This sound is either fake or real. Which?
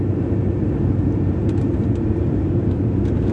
fake